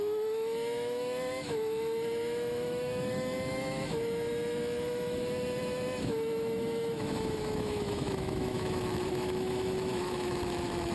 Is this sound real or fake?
fake